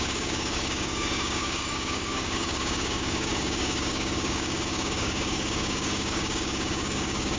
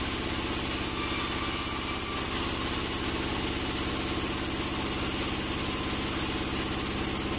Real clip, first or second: second